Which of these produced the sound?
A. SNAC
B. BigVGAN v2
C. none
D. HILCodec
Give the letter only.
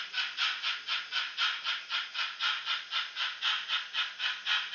C